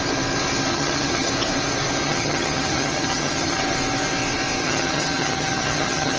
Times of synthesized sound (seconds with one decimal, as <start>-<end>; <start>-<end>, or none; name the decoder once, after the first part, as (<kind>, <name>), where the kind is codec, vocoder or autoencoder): 0.7-1.3 (vocoder, HiFi-GAN); 2.0-3.6; 4.6-6.2